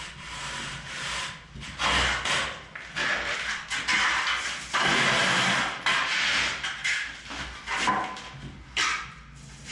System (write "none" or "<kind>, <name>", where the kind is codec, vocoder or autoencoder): none